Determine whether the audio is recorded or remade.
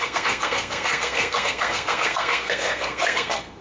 remade